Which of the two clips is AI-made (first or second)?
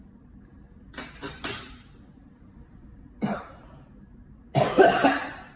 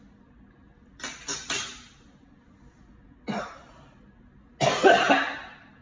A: first